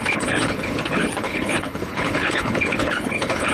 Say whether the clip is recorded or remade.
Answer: remade